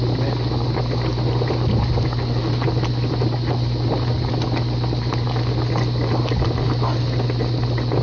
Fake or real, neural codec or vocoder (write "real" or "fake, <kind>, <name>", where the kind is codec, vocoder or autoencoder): real